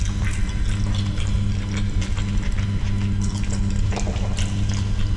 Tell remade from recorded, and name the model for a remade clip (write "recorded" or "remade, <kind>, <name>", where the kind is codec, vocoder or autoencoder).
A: recorded